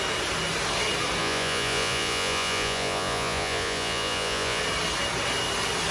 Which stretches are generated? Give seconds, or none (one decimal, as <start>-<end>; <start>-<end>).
1.2-4.6

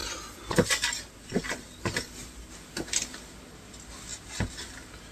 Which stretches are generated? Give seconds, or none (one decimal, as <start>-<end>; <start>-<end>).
none

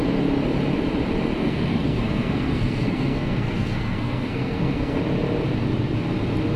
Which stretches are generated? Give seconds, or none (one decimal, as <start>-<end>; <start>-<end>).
1.4-5.0

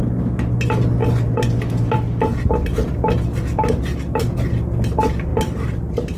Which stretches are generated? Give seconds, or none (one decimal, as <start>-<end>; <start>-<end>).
none

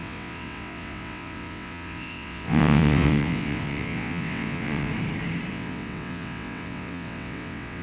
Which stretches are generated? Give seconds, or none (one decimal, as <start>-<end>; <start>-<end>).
0.0-4.9; 5.5-7.8

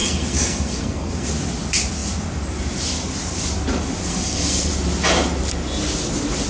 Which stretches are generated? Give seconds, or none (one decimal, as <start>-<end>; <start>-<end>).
0.0-1.3; 4.0-4.7

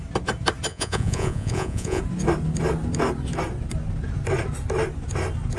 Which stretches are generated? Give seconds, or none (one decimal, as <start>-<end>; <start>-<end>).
0.7-2.0

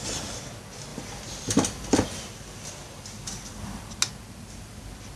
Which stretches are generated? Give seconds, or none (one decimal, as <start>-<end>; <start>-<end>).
0.9-3.9